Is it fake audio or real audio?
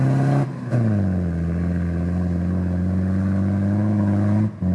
real